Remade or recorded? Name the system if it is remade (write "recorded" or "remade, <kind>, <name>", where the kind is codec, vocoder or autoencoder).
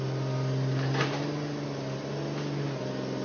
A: recorded